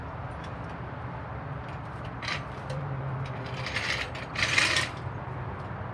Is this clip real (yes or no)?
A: no